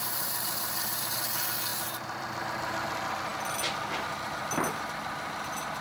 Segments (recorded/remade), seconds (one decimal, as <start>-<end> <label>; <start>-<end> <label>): 0.0-1.7 recorded; 1.7-2.4 remade; 2.4-5.8 recorded

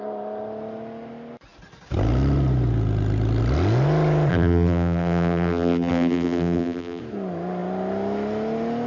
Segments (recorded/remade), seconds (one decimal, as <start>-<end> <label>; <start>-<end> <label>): 0.0-4.3 recorded; 4.3-7.0 remade; 7.0-8.9 recorded

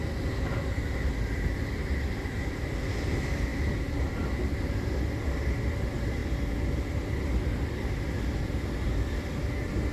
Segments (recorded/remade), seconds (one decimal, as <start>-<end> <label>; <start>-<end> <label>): 0.0-9.9 recorded